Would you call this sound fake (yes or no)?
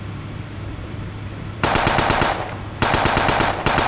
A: yes